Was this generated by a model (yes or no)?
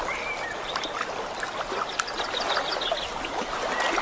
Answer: no